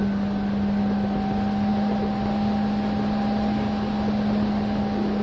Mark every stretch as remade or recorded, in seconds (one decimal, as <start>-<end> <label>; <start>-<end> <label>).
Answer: 0.0-5.2 recorded